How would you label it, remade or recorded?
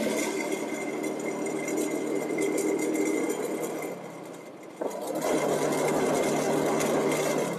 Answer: recorded